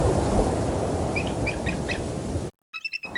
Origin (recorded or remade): recorded